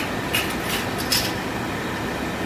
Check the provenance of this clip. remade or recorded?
recorded